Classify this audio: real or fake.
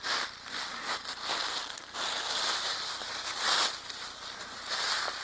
real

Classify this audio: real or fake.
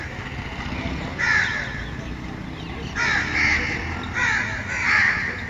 real